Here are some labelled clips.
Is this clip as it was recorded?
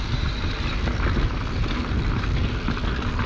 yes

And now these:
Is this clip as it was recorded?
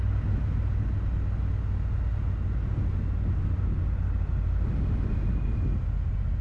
yes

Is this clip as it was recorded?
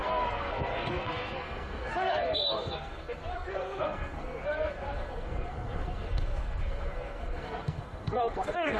no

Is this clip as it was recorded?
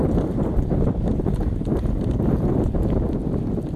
yes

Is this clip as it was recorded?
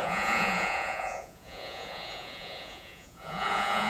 no